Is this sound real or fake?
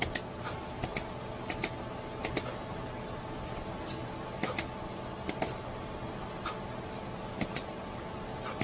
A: real